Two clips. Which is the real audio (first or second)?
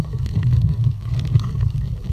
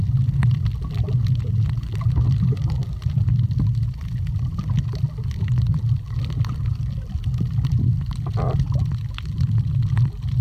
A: second